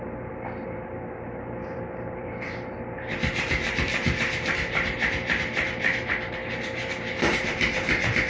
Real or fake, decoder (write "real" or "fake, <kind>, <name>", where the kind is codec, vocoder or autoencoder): fake, vocoder, BigVGAN v2